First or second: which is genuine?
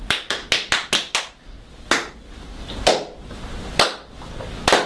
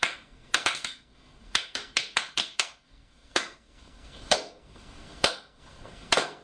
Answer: first